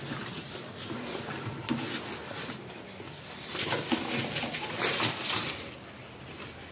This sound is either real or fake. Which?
real